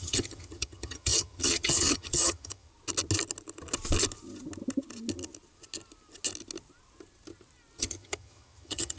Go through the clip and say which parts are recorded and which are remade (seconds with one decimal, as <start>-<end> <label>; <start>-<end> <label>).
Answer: 0.0-2.7 remade; 2.7-7.8 recorded; 7.8-9.0 remade